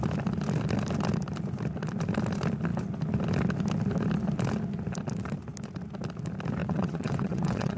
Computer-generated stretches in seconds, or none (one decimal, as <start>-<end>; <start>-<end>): 6.6-7.8